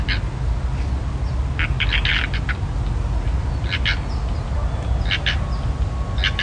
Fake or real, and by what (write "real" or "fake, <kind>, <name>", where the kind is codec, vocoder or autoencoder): real